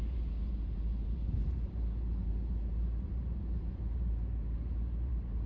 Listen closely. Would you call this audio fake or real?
fake